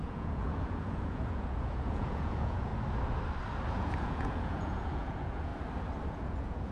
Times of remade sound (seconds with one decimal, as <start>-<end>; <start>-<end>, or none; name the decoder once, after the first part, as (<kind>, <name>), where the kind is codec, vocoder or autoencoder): 0.0-2.7 (vocoder, Vocos); 3.7-5.5; 6.1-6.7